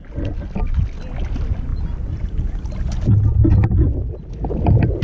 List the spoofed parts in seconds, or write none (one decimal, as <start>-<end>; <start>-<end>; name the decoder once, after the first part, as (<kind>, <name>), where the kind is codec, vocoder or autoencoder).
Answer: none